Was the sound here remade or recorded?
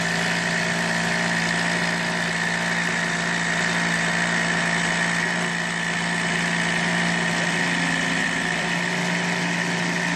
recorded